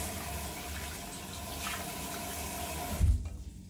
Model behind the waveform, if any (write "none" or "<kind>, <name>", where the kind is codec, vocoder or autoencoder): none